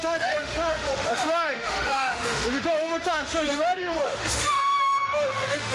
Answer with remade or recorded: remade